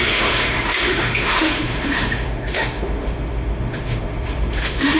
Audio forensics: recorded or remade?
remade